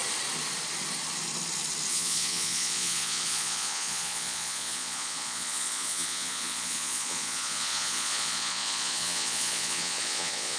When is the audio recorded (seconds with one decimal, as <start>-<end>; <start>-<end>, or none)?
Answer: 0.0-1.9